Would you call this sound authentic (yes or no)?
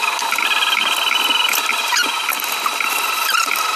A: yes